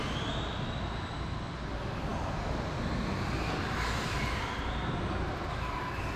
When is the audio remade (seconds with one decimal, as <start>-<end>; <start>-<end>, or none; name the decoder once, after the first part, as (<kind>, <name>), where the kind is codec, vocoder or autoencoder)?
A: none